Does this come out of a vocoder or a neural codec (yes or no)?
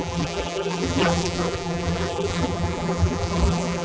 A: yes